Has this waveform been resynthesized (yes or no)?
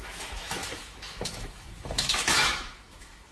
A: yes